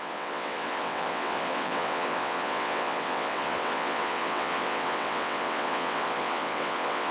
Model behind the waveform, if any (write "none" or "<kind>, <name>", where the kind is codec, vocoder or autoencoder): vocoder, WaveNeXt